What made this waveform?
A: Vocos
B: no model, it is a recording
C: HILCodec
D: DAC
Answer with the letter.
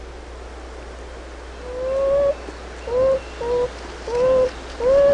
B